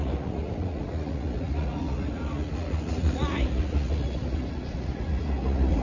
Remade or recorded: remade